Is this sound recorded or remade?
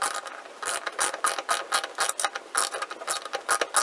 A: recorded